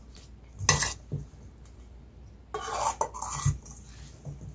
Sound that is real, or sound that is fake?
real